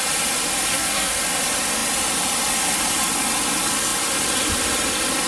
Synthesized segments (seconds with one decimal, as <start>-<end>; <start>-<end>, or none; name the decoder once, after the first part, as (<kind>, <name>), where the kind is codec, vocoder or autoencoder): 0.7-1.2 (codec, SNAC)